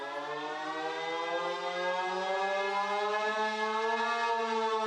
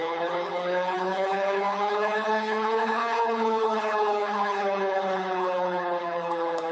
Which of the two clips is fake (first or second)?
second